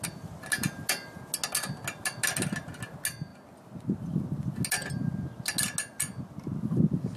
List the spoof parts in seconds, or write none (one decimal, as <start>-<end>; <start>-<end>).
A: none